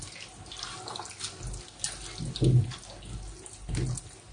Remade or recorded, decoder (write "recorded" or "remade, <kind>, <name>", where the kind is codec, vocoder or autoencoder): recorded